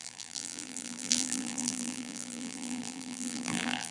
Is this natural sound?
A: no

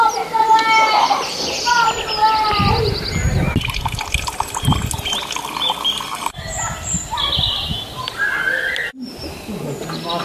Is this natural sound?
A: yes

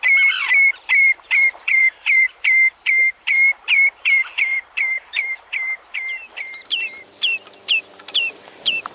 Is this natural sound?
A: no